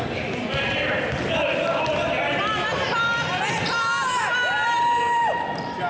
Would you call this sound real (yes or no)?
yes